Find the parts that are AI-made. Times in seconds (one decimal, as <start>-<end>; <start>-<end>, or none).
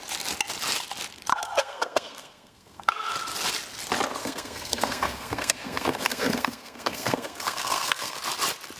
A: 1.3-3.1; 4.2-8.2